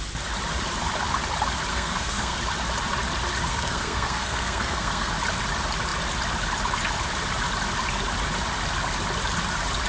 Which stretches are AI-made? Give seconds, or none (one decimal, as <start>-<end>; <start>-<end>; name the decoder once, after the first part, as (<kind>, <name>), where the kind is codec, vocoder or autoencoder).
1.7-2.4 (codec, SNAC); 3.5-5.1